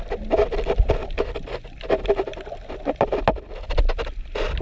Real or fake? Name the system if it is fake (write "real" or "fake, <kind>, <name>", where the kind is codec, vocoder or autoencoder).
real